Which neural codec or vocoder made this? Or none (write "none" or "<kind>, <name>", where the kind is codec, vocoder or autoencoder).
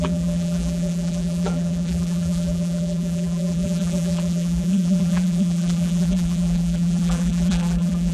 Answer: vocoder, BigVGAN v2